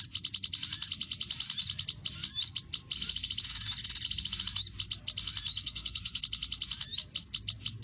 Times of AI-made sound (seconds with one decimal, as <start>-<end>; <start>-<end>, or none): 5.5-6.2